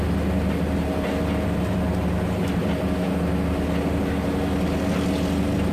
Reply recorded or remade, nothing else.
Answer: recorded